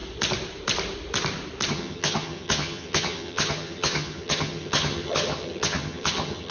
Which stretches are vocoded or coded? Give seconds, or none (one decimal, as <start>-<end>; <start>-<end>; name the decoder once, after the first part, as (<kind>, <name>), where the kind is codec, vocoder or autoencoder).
1.7-6.5 (vocoder, HiFi-GAN)